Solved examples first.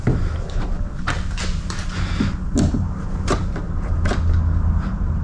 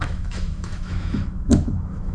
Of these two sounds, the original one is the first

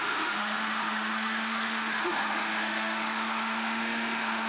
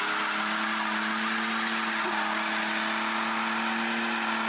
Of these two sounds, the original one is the second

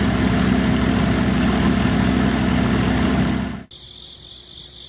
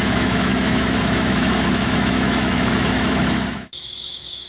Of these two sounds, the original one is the first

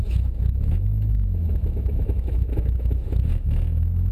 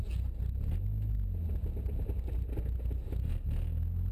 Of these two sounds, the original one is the second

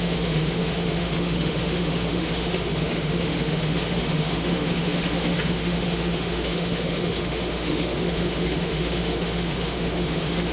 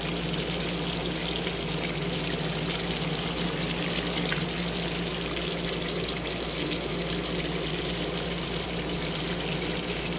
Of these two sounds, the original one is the second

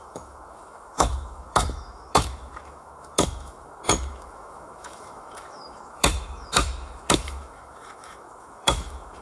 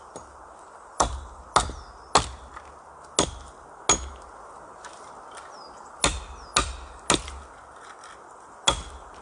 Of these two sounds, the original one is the second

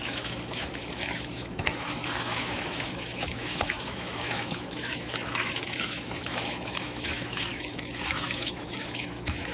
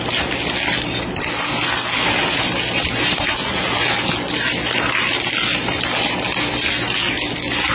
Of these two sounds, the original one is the second